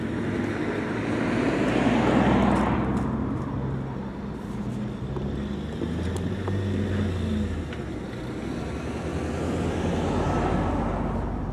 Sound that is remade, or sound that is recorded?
recorded